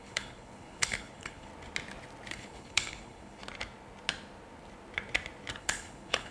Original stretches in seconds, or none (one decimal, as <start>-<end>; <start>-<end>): 1.5-2.3; 3.4-5.6